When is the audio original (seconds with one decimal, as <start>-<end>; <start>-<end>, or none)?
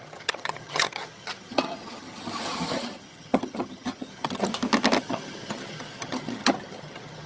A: 4.5-5.0